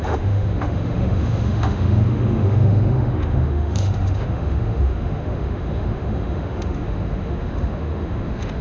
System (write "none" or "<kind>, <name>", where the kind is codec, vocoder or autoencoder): autoencoder, DAC-VAE